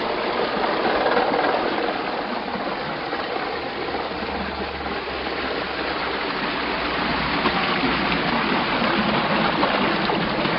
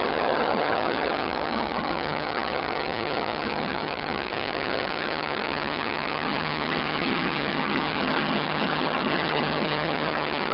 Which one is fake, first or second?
second